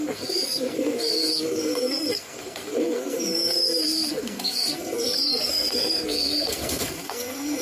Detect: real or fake fake